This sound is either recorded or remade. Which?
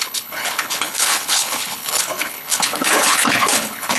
remade